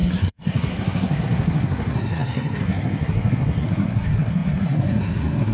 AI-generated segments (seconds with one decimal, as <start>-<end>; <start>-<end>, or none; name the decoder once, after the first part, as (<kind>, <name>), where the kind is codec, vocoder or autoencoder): 0.0-5.5 (codec, SNAC)